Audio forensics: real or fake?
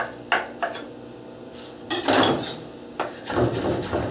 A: real